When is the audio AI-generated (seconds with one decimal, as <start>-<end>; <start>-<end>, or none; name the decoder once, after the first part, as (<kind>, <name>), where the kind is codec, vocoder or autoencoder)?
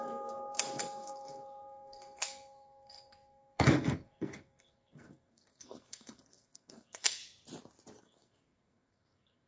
0.0-7.2 (codec, SNAC); 8.0-9.5